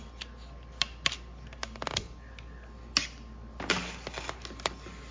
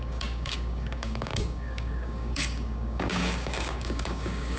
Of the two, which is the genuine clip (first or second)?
first